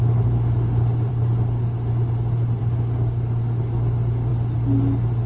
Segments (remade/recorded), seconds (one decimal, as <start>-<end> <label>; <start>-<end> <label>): 0.0-5.3 recorded